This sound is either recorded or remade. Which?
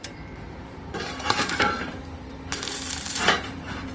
remade